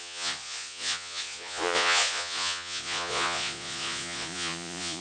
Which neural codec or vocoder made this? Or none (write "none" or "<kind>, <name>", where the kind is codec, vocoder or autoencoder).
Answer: vocoder, Vocos